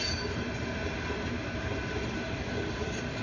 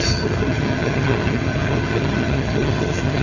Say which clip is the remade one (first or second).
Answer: second